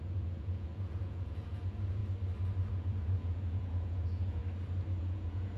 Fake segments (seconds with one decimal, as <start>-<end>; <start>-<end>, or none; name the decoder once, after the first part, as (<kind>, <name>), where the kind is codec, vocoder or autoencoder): 0.0-2.0 (vocoder, Vocos); 2.7-4.4; 5.0-5.6

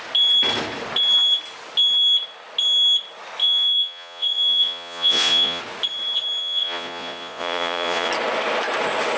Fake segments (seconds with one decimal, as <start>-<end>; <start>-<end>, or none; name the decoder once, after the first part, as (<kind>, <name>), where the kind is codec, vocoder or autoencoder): 3.4-5.6 (vocoder, Vocos); 6.4-8.1

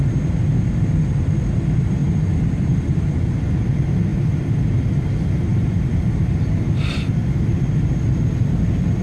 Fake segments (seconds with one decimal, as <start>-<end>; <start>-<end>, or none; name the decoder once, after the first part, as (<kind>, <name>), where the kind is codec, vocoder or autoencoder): 2.0-3.1 (vocoder, BigVGAN v2); 5.5-6.5

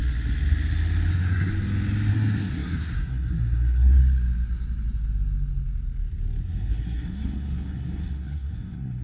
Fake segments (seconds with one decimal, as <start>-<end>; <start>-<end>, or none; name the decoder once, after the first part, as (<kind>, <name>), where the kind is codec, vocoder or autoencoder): 1.1-1.5 (codec, SNAC); 2.1-4.0; 6.4-9.0

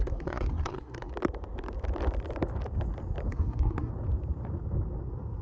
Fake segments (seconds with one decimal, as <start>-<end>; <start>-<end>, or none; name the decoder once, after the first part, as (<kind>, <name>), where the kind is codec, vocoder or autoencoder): 0.0-1.1 (codec, SNAC); 3.3-3.9

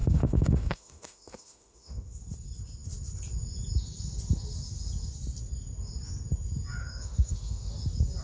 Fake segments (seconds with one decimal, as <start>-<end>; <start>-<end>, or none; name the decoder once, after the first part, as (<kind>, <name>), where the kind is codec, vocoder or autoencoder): 0.0-2.2 (autoencoder, DAC-VAE); 6.8-7.7